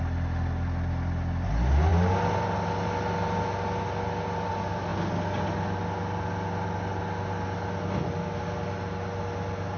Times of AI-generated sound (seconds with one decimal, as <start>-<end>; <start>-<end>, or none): none